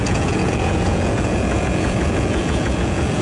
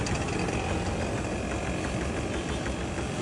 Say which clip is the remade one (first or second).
first